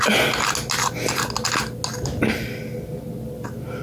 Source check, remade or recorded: recorded